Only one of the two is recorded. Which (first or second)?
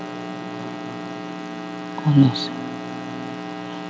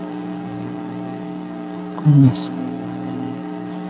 first